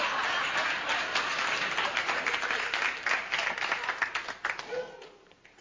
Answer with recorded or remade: recorded